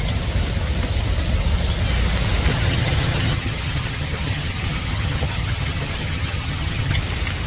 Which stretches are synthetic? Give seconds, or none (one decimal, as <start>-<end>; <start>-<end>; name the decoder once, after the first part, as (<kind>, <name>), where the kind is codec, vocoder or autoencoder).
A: 2.5-7.0 (vocoder, HiFi-GAN)